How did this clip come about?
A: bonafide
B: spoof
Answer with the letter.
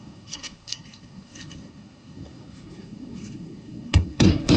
B